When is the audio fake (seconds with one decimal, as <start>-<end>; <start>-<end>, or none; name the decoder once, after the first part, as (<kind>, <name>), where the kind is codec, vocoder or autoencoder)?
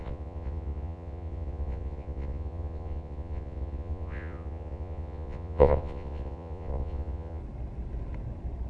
0.0-7.4 (vocoder, Vocos)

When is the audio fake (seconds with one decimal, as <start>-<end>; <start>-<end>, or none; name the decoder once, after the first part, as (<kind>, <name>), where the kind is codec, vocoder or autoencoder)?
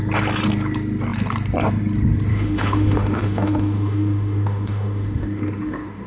2.3-6.1 (autoencoder, DAC-VAE)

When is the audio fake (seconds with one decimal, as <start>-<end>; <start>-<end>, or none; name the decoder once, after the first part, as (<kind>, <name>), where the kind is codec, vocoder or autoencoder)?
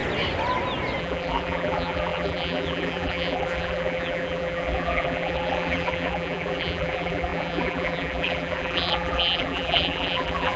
1.0-10.6 (vocoder, BigVGAN v2)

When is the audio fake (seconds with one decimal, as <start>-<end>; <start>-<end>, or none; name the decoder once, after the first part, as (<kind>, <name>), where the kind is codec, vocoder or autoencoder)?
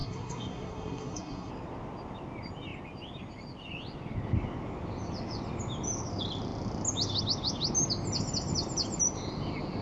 0.0-1.5 (codec, SNAC)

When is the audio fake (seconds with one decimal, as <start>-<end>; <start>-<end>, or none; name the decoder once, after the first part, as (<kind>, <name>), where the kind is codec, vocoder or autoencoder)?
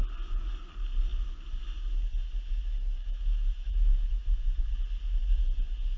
3.0-4.6 (autoencoder, DAC-VAE)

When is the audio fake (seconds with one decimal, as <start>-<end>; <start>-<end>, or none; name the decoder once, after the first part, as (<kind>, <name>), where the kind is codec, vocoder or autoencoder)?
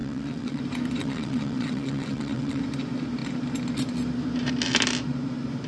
0.0-0.6 (vocoder, WaveNeXt); 1.0-2.6